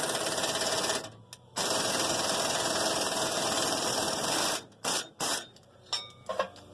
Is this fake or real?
real